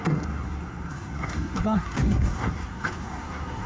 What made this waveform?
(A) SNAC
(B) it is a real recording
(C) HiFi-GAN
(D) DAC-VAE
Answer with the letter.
A